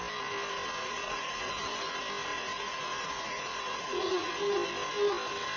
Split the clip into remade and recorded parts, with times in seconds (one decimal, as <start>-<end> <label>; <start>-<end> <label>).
0.0-0.8 recorded; 0.8-1.9 remade; 1.9-2.3 recorded; 2.3-4.3 remade; 4.3-5.6 recorded